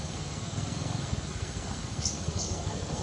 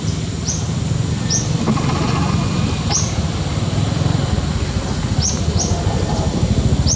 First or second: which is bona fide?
second